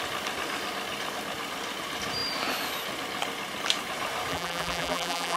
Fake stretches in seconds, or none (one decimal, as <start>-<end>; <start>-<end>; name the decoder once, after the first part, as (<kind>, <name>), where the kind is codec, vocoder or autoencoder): 4.3-5.4 (vocoder, BigVGAN v2)

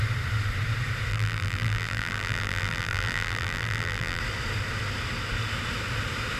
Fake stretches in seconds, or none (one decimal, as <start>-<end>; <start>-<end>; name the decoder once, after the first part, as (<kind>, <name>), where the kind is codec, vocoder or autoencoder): 1.1-4.2 (vocoder, BigVGAN v2)

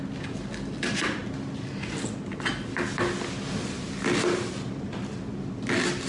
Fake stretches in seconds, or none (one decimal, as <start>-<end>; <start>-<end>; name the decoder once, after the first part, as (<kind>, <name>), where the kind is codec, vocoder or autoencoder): none

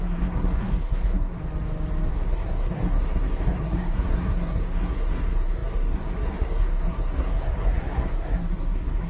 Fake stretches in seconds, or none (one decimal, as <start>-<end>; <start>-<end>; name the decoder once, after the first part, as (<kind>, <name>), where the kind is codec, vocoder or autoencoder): 0.0-1.4 (codec, SNAC); 2.1-9.1